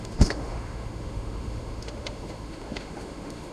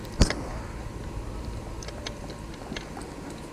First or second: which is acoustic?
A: second